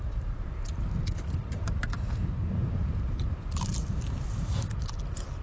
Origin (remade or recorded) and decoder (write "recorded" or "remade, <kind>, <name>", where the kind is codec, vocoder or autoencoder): recorded